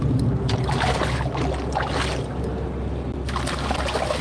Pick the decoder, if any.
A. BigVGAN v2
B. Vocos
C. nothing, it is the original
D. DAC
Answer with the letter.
C